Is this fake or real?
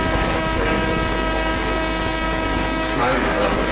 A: fake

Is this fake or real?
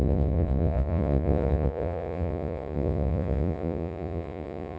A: fake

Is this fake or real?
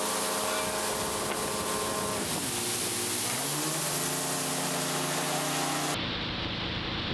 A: real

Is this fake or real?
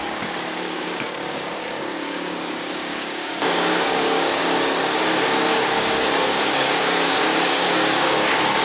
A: fake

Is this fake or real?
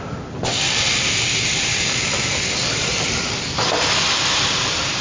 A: real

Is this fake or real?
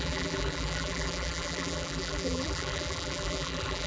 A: fake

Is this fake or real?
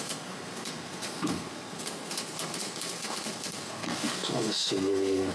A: fake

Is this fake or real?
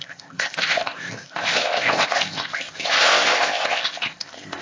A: fake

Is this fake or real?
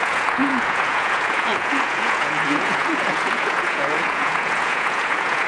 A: fake